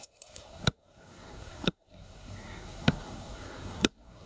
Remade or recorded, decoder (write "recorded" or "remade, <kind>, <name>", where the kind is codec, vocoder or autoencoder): remade, codec, SNAC